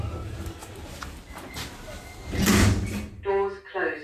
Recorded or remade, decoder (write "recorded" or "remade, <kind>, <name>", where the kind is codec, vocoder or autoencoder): recorded